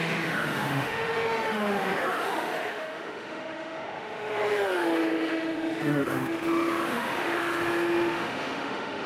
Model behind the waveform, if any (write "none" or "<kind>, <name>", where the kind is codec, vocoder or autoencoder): autoencoder, DAC-VAE